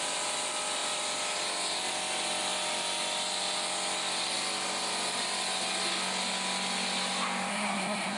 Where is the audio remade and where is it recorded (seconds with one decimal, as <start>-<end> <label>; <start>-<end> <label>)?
0.0-7.5 recorded; 7.5-8.2 remade